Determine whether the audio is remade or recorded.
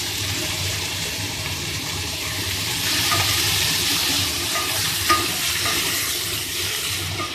remade